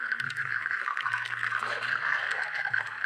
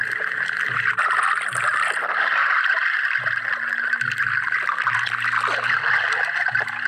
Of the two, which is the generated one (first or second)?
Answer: first